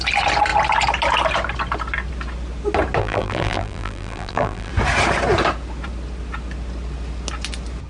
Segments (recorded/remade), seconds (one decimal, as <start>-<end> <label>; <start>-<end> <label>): 0.0-3.0 recorded; 3.0-4.7 remade; 4.7-7.9 recorded

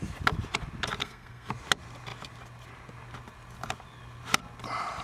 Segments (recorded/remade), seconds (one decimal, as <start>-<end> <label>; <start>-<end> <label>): 0.0-1.0 recorded; 1.0-1.5 remade; 1.5-5.0 recorded

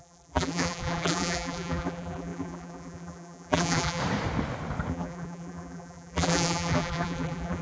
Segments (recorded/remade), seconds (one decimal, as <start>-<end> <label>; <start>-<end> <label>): 0.0-4.0 remade; 4.0-4.9 recorded; 4.9-7.6 remade

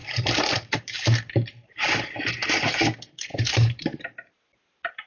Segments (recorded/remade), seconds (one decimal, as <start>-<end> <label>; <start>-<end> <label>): 0.0-2.7 remade; 2.7-3.3 recorded; 3.3-4.3 remade; 4.3-5.1 recorded